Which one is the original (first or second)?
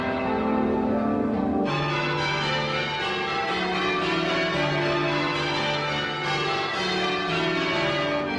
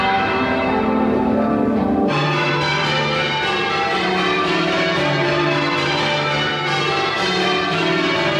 first